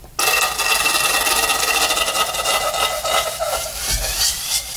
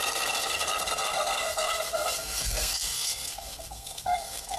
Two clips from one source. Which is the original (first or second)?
first